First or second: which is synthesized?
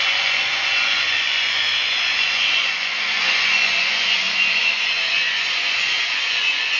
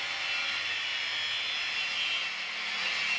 first